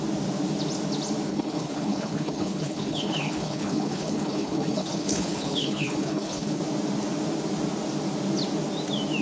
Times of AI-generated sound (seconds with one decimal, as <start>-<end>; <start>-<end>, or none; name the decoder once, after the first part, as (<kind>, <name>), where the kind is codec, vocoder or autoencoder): 1.3-6.6 (codec, HILCodec)

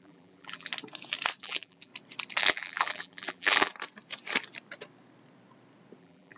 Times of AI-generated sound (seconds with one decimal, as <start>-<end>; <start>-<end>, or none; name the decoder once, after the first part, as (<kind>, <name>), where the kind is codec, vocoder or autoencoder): 0.0-0.7 (vocoder, BigVGAN v2); 1.4-1.9; 2.4-3.7; 6.0-6.4